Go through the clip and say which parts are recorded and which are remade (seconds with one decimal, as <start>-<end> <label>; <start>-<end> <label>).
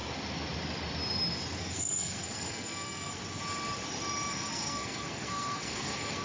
0.0-1.6 recorded; 1.6-3.2 remade; 3.2-4.3 recorded; 4.3-6.2 remade